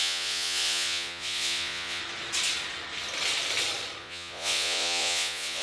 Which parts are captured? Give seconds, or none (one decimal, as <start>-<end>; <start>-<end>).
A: 2.0-4.0